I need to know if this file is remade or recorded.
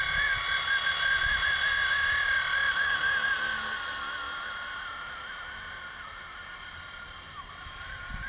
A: recorded